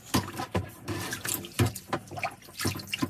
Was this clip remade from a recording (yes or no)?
no